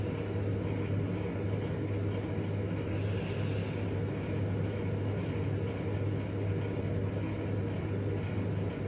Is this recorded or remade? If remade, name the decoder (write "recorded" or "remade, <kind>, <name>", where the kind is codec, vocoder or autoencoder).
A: recorded